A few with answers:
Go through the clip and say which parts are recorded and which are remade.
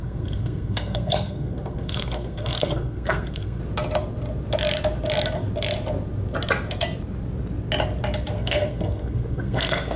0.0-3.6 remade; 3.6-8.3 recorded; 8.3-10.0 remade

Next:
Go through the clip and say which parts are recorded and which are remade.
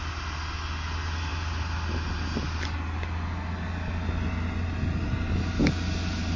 0.0-6.4 recorded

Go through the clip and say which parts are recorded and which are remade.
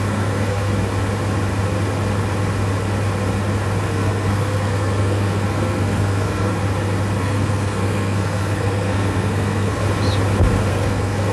0.0-0.7 remade; 0.7-3.8 recorded; 3.8-6.5 remade; 6.5-7.2 recorded; 7.2-9.8 remade; 9.8-10.7 recorded; 10.7-11.3 remade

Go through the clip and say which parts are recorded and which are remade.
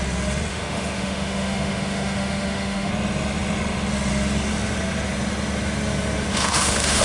0.0-0.5 recorded; 0.5-2.9 remade; 2.9-6.3 recorded; 6.3-7.0 remade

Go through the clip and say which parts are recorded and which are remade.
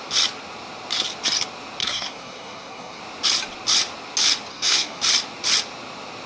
0.0-1.8 recorded; 1.8-3.0 remade; 3.0-4.5 recorded; 4.5-5.0 remade; 5.0-6.3 recorded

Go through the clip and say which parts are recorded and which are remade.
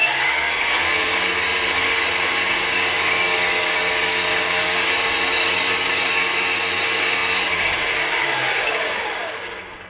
0.0-9.9 remade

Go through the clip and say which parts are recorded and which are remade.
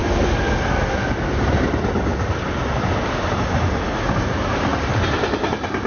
0.0-5.9 recorded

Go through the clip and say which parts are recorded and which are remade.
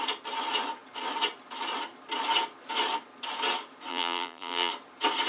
0.0-3.9 recorded; 3.9-4.7 remade; 4.7-5.3 recorded